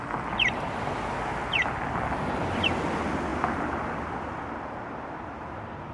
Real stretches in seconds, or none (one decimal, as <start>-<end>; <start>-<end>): 0.0-5.9